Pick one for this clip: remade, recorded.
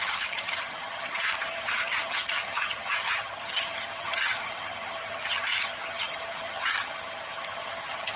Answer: remade